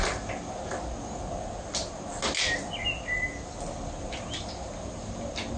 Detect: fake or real real